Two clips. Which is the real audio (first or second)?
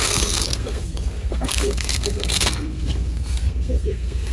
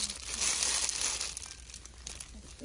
second